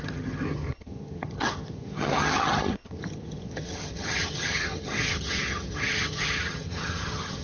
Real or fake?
fake